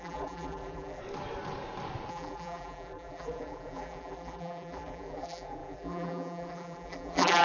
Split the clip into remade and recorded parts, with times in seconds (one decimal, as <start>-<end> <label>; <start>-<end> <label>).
0.0-1.0 remade; 1.0-2.1 recorded; 2.1-7.4 remade